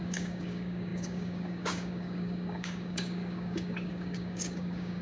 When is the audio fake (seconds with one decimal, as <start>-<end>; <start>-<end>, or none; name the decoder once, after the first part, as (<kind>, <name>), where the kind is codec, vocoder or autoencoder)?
0.0-5.0 (codec, DAC)